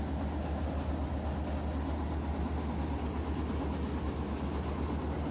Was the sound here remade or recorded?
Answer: recorded